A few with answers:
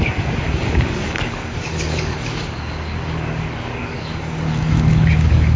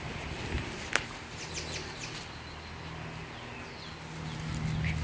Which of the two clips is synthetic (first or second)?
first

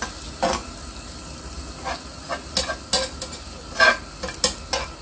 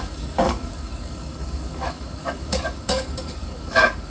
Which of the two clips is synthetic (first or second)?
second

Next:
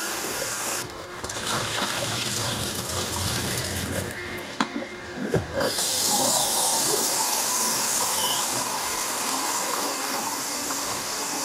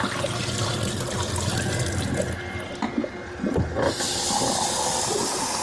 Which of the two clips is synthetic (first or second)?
first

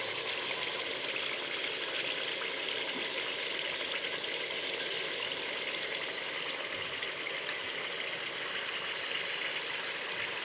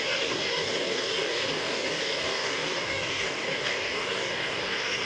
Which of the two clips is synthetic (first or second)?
second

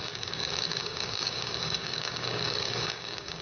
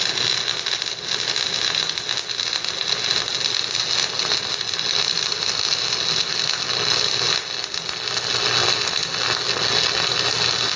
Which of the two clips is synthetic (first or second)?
first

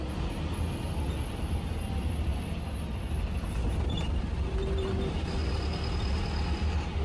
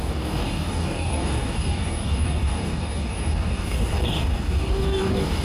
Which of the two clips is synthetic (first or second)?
second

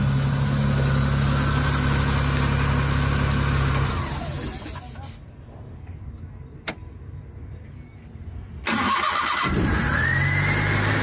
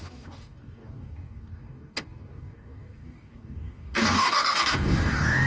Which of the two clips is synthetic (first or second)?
second